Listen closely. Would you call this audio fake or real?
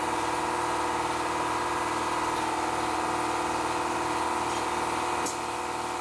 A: real